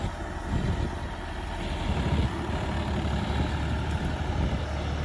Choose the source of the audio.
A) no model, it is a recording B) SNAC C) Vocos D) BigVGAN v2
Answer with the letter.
A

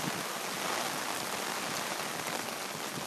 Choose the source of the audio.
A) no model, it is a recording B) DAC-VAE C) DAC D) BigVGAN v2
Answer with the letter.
A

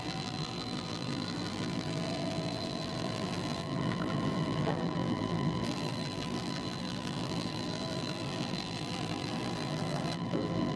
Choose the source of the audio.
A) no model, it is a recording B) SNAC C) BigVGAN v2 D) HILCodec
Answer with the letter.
C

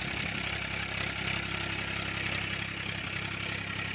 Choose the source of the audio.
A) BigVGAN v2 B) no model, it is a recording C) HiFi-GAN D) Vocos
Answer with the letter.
B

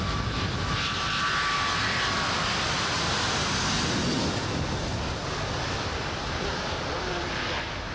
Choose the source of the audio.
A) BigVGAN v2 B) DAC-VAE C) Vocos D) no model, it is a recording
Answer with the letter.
D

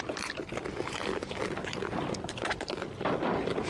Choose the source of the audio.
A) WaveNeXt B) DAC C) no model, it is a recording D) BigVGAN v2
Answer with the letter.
D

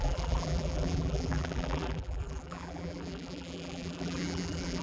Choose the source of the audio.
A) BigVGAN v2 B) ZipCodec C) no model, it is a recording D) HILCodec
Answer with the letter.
A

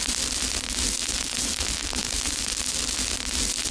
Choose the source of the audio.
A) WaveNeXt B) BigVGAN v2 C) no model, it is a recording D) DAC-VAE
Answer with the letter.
C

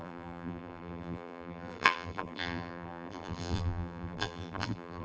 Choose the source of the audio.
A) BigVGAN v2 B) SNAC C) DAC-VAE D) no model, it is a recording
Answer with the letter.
A